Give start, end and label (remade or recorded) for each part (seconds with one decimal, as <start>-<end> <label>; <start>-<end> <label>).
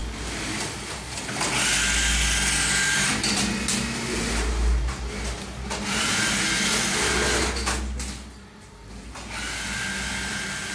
0.0-10.7 recorded